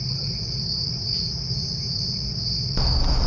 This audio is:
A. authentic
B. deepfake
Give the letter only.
A